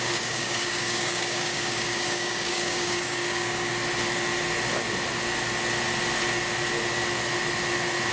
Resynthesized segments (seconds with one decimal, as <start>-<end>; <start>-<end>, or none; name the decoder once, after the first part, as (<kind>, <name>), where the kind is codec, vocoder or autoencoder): 0.0-3.7 (codec, DAC)